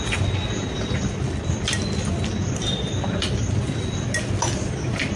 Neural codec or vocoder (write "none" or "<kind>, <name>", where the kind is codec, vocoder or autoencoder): none